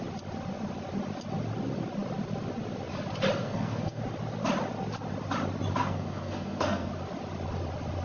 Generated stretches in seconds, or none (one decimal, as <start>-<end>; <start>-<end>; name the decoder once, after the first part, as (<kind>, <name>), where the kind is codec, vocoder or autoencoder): 3.4-4.0 (codec, SNAC); 5.8-6.9